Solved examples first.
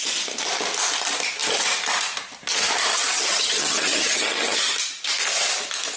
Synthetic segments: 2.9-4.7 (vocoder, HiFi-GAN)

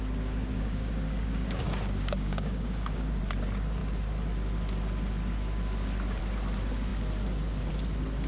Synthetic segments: 0.5-3.2 (codec, DAC)

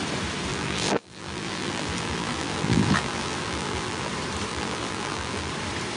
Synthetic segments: 0.5-4.1 (vocoder, BigVGAN v2); 4.5-5.5

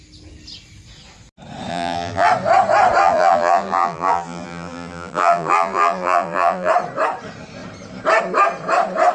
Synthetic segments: 1.7-2.3 (vocoder, BigVGAN v2); 3.0-6.7

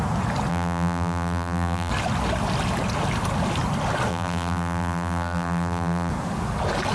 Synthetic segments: 0.5-1.9 (vocoder, BigVGAN v2); 4.1-6.1

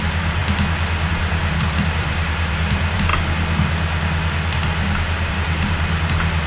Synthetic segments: 0.0-0.4 (vocoder, BigVGAN v2); 1.1-3.1; 5.3-6.5

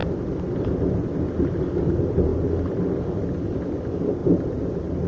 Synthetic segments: 0.0-1.3 (vocoder, BigVGAN v2); 2.3-3.1; 4.2-5.1